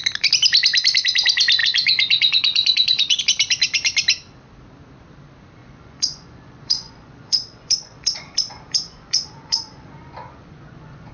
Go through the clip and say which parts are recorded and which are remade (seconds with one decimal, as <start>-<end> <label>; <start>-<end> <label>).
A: 0.0-1.6 recorded; 1.6-3.2 remade; 3.2-5.6 recorded; 5.6-11.1 remade